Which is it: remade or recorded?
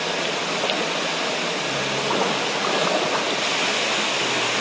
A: recorded